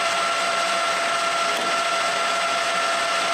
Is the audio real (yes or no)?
yes